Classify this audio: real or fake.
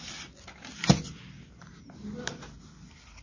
real